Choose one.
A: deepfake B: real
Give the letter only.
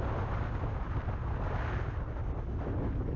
B